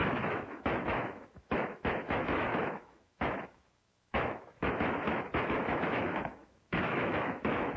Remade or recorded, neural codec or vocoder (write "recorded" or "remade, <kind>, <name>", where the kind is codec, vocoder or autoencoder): remade, autoencoder, DAC-VAE